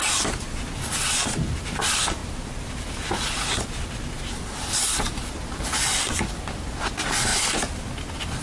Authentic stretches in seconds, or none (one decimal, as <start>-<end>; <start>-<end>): 0.0-1.2; 1.8-7.3; 7.8-8.4